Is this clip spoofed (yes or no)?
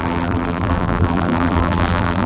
yes